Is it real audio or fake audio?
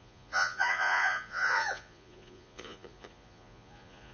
fake